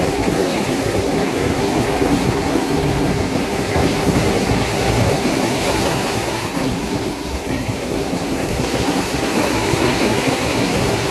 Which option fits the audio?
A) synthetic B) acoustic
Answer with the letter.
A